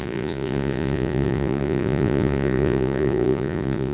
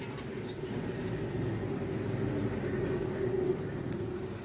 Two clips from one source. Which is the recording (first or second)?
second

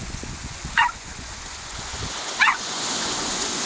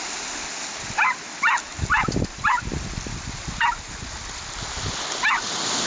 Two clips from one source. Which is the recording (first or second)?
second